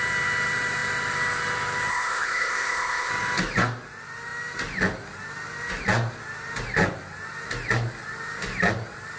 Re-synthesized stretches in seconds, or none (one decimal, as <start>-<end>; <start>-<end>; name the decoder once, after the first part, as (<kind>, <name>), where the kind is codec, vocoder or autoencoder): 1.9-3.1 (codec, ZipCodec)